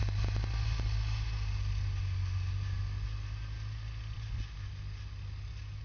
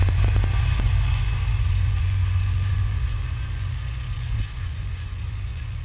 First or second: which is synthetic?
second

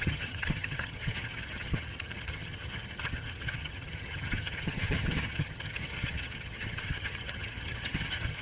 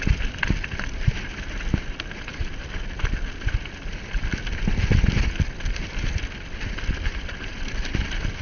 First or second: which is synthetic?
first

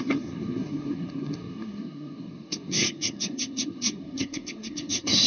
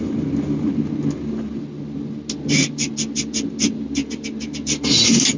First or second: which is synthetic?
first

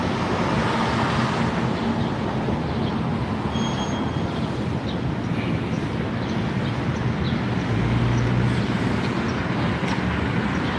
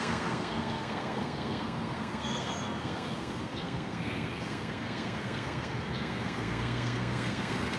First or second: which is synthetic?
second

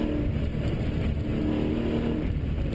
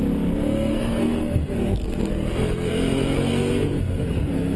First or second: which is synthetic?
second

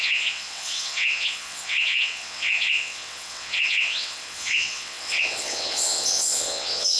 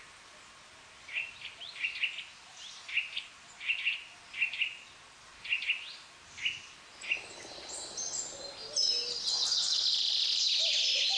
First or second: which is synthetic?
first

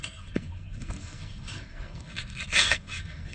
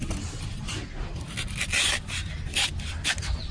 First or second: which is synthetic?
first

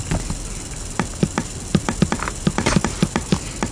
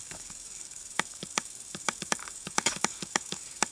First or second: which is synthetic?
second